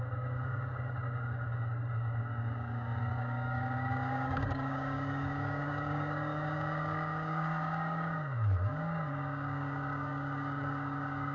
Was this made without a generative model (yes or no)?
no